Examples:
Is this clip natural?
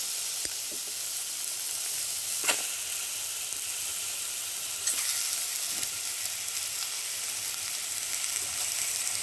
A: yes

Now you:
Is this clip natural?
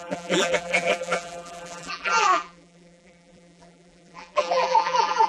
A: no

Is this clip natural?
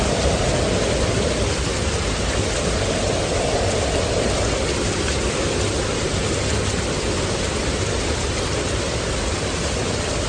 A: yes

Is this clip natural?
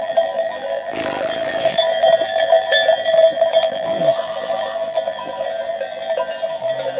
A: no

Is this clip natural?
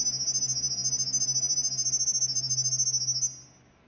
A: yes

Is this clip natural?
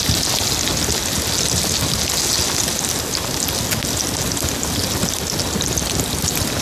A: yes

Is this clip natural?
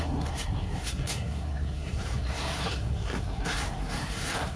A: no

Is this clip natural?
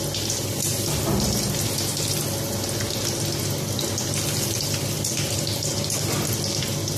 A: yes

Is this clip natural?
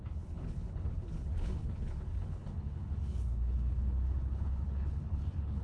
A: no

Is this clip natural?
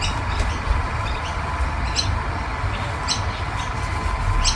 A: yes